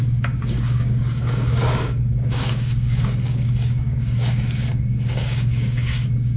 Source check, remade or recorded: remade